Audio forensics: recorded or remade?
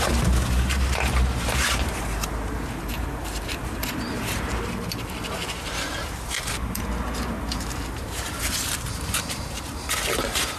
remade